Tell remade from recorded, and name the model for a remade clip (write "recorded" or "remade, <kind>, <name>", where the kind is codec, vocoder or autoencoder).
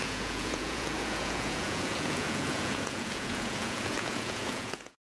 remade, vocoder, Vocos